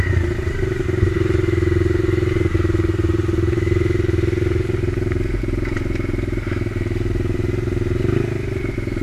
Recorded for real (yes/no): no